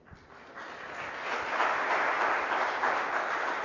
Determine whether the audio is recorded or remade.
recorded